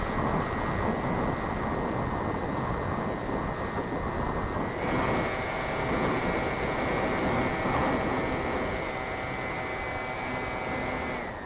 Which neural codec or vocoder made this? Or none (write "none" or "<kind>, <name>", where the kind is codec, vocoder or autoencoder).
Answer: none